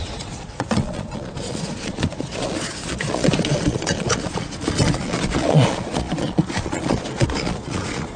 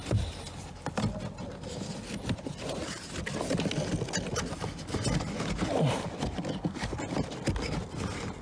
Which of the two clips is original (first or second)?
second